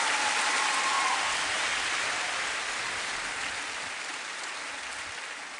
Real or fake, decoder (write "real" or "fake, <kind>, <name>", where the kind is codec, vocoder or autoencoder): real